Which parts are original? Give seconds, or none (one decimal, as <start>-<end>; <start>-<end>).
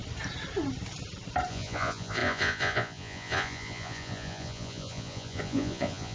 0.0-1.5